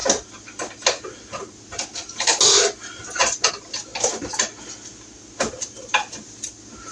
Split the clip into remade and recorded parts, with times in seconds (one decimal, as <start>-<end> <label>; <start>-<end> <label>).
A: 0.0-6.9 recorded